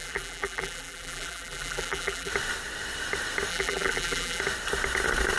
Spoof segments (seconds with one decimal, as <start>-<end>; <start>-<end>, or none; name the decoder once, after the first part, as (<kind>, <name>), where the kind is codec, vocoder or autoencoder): 0.0-2.3 (vocoder, BigVGAN v2); 3.5-4.4